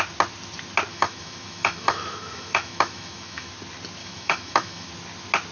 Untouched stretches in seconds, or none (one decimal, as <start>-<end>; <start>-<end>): 0.0-0.9; 3.5-4.0; 4.9-5.5